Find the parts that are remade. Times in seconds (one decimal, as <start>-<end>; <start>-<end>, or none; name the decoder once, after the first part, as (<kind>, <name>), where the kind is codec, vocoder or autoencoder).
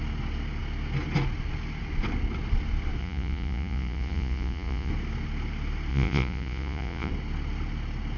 3.0-4.9 (vocoder, Vocos); 5.9-7.1